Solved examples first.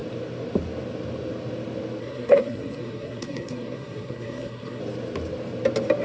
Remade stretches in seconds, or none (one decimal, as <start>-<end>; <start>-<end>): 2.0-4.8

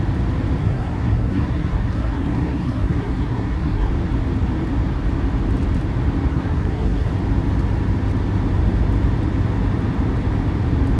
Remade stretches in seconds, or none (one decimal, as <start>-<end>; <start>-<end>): 0.6-3.9; 6.3-7.1

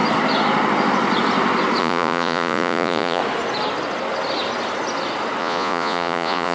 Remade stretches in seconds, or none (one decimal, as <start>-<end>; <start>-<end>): 1.8-3.2; 5.4-6.5